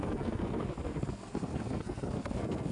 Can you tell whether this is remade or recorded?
remade